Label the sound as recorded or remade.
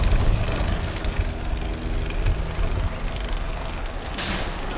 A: recorded